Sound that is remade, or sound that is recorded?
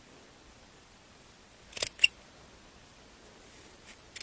recorded